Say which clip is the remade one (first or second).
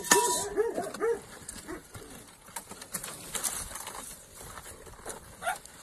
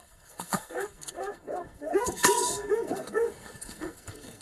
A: second